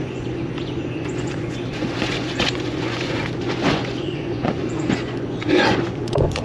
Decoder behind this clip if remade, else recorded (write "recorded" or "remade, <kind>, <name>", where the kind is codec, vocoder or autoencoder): remade, vocoder, Vocos